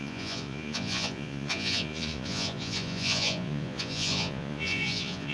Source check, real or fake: fake